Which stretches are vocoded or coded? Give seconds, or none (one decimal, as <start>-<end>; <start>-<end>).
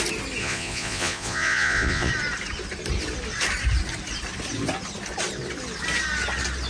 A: 0.4-2.1